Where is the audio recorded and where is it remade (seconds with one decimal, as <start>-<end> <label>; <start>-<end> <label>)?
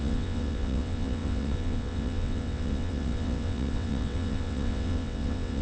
0.0-5.6 remade